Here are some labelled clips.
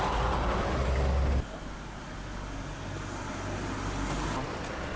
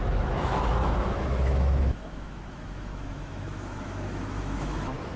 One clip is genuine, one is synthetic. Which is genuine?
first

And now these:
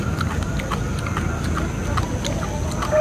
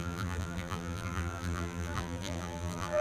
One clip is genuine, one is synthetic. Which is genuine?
first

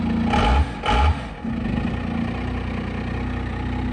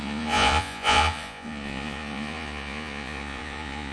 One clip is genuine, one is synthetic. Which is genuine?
first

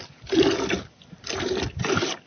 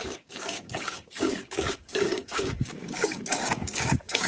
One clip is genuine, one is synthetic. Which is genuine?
first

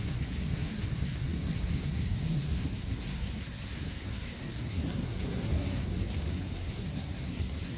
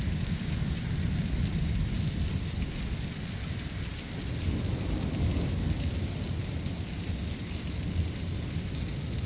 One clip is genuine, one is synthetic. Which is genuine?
second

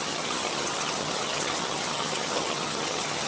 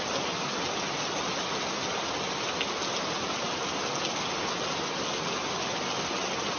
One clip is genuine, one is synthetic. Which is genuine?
second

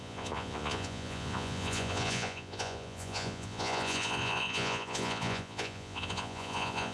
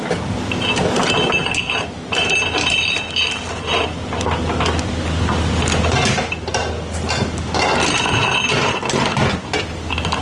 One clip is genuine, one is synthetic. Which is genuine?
second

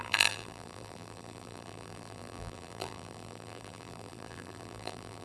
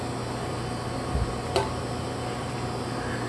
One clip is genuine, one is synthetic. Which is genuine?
second